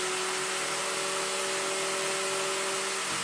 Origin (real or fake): real